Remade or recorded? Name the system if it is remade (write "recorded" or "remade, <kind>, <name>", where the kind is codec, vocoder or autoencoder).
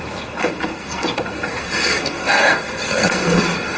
remade, codec, SNAC